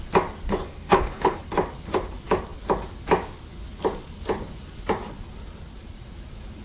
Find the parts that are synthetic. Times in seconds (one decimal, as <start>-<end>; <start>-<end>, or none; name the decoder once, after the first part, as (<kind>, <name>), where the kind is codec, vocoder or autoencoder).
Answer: 0.6-1.4 (codec, HILCodec)